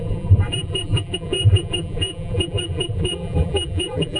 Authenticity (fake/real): fake